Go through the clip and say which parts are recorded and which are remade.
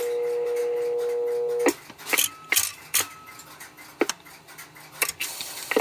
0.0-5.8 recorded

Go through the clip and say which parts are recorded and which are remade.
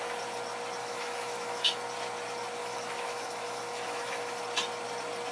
0.0-0.8 recorded; 0.8-1.8 remade; 1.8-2.6 recorded; 2.6-4.4 remade; 4.4-5.3 recorded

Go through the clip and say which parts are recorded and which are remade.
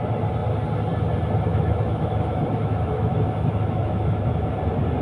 0.0-1.5 recorded; 1.5-4.5 remade; 4.5-5.0 recorded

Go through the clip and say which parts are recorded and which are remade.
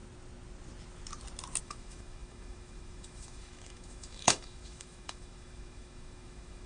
0.0-1.6 recorded; 1.6-6.7 remade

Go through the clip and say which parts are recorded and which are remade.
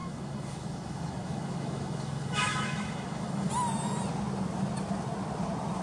0.0-3.5 remade; 3.5-5.8 recorded